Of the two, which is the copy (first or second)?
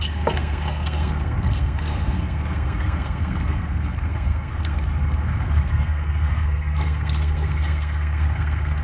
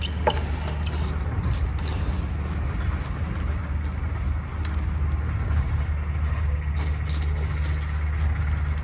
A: first